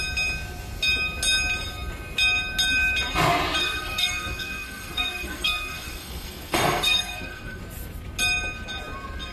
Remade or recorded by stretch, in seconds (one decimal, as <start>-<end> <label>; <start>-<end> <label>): 0.0-3.6 recorded; 3.6-7.6 remade; 7.6-9.3 recorded